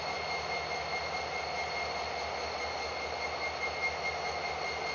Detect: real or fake real